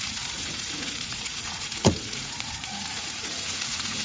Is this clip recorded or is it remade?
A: remade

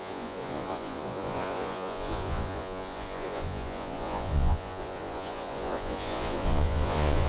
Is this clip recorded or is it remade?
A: remade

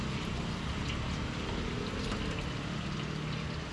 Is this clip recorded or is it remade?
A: recorded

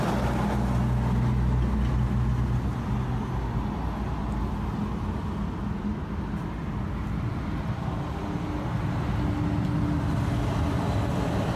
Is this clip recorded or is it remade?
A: recorded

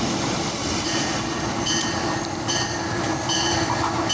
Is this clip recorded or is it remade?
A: recorded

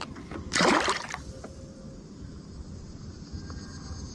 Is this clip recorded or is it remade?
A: recorded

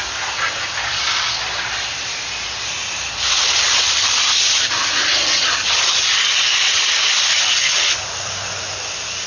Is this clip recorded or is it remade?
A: recorded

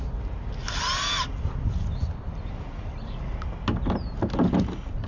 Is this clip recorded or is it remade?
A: recorded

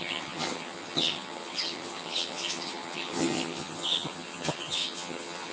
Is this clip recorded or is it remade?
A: remade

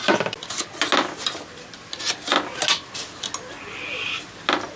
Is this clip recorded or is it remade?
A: recorded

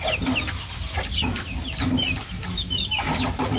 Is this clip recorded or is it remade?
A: recorded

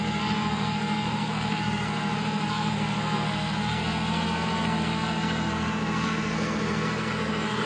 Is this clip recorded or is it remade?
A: remade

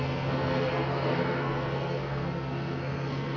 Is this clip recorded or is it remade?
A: remade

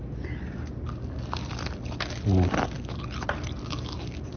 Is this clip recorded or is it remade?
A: recorded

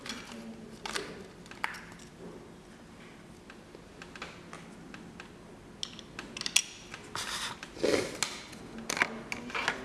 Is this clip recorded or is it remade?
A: recorded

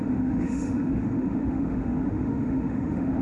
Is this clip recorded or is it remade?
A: remade